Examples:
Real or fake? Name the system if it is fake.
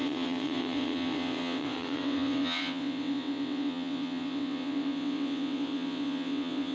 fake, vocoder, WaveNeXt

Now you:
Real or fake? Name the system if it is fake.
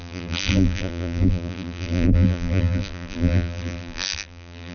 fake, vocoder, BigVGAN v2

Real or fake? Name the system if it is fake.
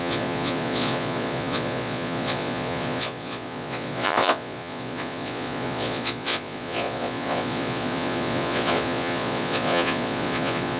fake, vocoder, Vocos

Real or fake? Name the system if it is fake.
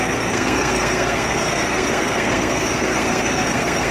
fake, codec, SNAC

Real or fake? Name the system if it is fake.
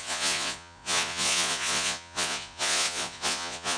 fake, vocoder, Vocos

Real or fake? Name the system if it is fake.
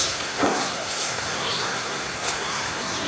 fake, codec, SNAC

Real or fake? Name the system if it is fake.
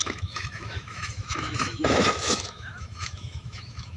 fake, autoencoder, DAC-VAE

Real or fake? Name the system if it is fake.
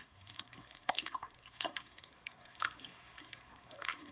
fake, codec, SNAC